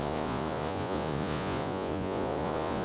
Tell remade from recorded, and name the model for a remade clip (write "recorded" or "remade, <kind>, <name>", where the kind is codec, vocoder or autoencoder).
remade, vocoder, Vocos